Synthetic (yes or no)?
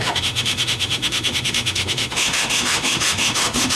yes